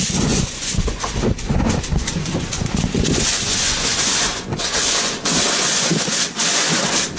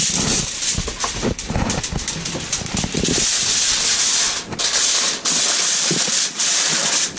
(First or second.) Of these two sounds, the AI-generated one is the first